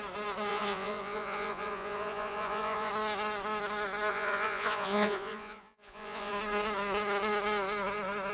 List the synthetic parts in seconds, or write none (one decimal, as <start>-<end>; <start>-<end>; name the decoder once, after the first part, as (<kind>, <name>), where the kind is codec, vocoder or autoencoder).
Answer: 0.5-2.9 (vocoder, Vocos); 4.1-6.3

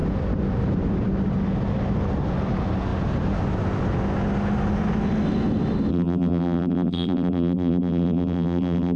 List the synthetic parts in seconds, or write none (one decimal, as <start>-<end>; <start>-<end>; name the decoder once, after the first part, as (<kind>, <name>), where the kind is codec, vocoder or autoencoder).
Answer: 5.9-9.0 (vocoder, BigVGAN v2)

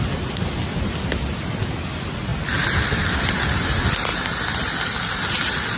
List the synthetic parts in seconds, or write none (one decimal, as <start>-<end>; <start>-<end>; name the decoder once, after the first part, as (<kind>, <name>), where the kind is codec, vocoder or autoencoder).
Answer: none

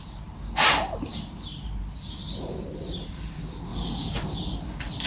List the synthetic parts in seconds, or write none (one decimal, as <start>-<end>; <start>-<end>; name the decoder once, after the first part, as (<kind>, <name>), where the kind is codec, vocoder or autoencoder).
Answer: 0.0-3.1 (vocoder, BigVGAN v2)

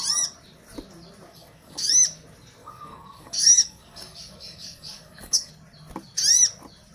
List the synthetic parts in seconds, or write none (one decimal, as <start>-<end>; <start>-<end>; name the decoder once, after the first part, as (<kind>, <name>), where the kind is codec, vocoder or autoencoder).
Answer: 1.3-1.9 (codec, DAC); 2.6-5.5

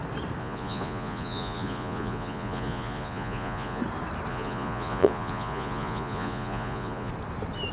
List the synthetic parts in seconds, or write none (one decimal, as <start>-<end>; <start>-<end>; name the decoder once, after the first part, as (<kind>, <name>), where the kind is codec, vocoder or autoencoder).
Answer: 0.4-3.8 (vocoder, Vocos); 4.3-7.1

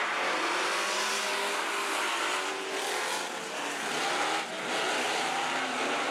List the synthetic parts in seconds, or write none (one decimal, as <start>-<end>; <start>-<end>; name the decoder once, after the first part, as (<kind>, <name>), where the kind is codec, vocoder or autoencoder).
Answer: none

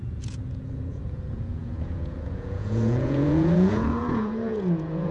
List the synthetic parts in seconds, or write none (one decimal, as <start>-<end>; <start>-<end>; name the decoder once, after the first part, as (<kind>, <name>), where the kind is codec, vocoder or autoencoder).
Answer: 0.0-5.1 (vocoder, Vocos)